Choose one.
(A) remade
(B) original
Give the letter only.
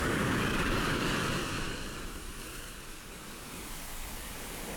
A